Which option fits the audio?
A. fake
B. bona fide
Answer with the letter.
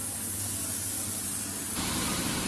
B